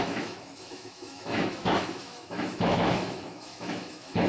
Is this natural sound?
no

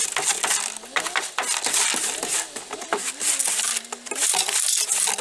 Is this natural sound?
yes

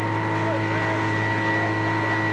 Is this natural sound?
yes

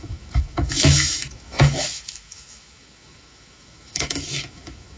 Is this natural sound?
no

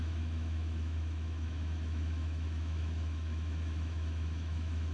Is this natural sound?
no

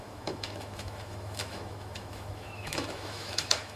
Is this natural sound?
no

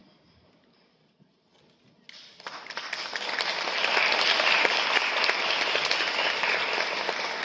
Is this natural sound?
yes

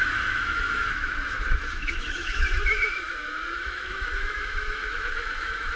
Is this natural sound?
no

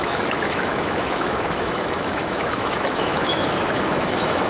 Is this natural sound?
no